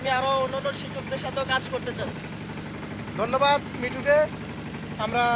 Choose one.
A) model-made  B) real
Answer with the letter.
B